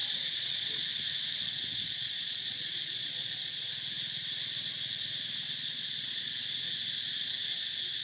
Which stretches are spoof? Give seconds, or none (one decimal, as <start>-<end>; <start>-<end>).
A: 0.0-0.8; 1.7-3.7; 5.7-6.3